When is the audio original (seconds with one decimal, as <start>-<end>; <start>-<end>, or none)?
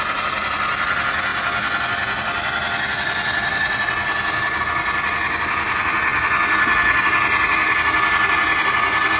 0.0-9.2